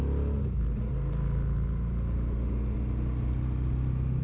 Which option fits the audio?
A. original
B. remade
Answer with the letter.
A